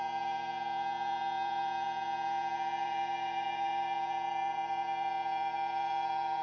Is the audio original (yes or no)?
no